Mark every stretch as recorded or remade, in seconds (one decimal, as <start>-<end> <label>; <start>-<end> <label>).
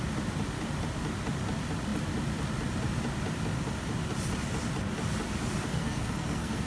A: 0.0-5.7 recorded; 5.7-6.7 remade